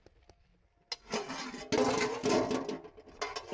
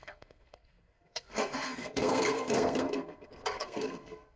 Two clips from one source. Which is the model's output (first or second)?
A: second